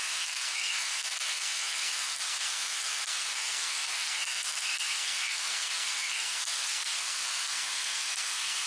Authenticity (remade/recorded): remade